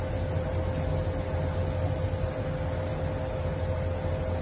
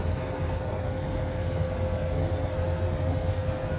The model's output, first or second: second